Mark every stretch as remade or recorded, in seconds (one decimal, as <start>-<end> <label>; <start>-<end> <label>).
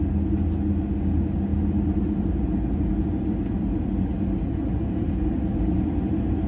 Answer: 0.0-6.5 recorded